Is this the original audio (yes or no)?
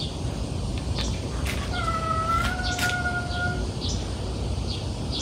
yes